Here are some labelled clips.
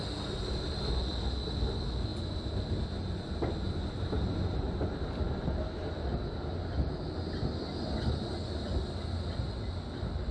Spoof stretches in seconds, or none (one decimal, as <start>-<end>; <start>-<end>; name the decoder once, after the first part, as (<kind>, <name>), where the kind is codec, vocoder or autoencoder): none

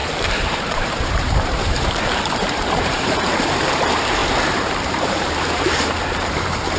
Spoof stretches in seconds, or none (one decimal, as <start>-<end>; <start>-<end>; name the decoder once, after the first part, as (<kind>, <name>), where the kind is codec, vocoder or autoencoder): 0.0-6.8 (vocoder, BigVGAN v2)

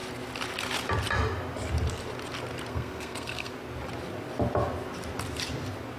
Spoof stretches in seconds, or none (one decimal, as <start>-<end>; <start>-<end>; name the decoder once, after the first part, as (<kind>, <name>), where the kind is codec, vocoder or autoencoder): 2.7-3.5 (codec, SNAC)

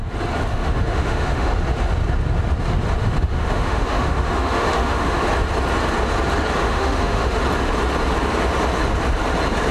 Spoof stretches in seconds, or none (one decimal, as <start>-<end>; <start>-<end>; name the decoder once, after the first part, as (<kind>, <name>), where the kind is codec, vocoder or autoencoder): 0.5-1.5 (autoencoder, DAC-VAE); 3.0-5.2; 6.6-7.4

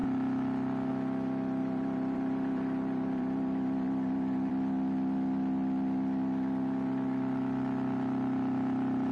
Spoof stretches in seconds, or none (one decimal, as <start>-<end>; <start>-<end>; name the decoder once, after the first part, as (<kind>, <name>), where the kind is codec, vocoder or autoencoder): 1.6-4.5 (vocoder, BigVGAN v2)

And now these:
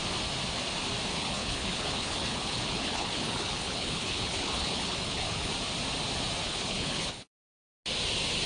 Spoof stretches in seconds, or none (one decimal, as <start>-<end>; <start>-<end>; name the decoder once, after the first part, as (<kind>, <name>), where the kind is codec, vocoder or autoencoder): 1.1-5.5 (codec, HILCodec); 6.4-7.3

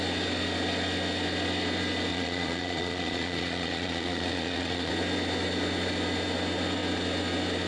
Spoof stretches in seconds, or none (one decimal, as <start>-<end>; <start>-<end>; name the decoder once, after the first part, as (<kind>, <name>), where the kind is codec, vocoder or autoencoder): 2.1-4.9 (vocoder, Vocos)

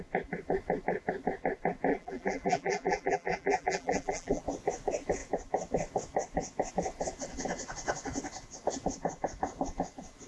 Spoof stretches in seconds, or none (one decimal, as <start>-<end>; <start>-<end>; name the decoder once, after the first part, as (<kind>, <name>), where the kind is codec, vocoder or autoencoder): 1.9-4.4 (vocoder, BigVGAN v2)